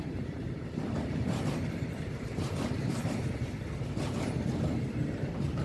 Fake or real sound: fake